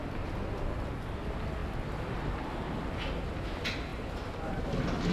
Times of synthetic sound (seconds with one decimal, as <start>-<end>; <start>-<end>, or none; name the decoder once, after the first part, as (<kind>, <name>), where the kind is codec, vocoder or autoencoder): 0.0-0.6 (vocoder, BigVGAN v2); 1.6-3.5; 3.9-4.5